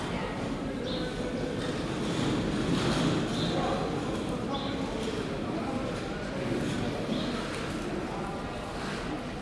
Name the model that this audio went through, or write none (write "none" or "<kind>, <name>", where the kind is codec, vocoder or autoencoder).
none